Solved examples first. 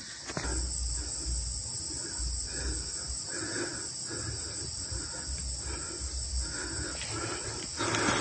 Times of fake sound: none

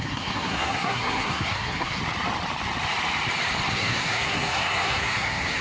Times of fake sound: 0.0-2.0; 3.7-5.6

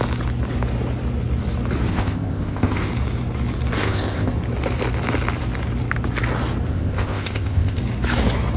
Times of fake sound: 1.9-2.9; 3.8-4.3; 6.7-7.8